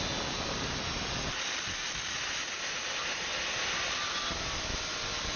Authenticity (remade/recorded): recorded